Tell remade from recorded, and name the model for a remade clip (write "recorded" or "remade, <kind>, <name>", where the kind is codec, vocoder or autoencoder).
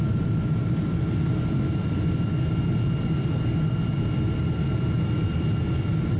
recorded